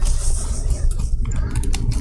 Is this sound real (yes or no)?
no